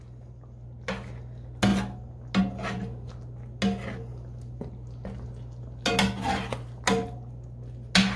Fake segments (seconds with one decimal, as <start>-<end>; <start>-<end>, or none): none

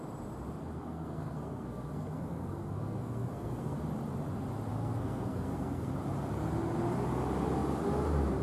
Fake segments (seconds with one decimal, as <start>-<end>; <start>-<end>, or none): 0.6-3.8; 4.7-5.9

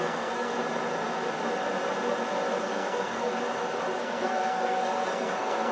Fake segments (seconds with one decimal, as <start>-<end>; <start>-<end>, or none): 0.0-0.5; 2.6-3.3; 4.0-5.7

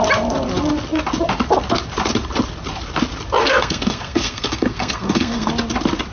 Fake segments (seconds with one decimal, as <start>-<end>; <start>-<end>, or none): 3.4-5.5

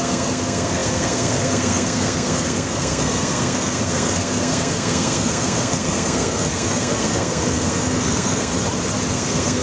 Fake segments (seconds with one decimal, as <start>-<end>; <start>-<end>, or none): 0.0-8.5; 9.1-9.6

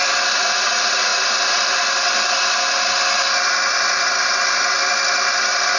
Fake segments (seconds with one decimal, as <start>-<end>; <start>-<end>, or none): none